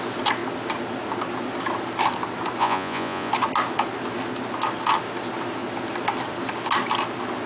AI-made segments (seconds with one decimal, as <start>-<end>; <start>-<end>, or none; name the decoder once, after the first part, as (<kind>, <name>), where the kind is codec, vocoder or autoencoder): 2.6-3.3 (vocoder, Vocos)